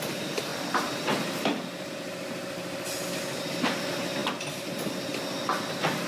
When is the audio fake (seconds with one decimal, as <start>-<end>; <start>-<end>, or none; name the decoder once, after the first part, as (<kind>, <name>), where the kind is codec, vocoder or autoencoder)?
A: none